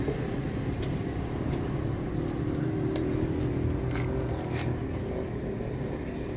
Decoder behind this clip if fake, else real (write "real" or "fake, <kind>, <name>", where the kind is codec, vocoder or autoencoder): real